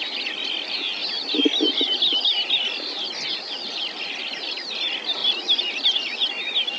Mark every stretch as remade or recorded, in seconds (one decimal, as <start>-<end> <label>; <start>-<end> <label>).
0.0-6.8 recorded